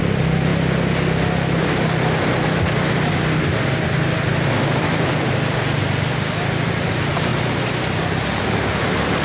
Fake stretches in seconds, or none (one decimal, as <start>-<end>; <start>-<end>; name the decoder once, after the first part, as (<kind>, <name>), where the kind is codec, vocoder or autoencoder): none